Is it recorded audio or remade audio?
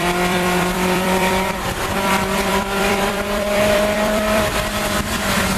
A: remade